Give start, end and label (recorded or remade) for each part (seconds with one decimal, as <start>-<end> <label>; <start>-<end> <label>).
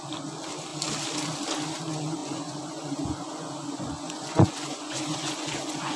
0.0-2.2 recorded; 2.2-6.0 remade